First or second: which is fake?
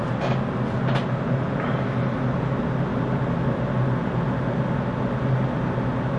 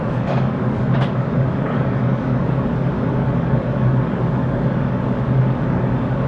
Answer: second